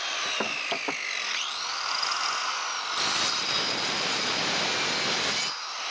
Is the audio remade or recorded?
recorded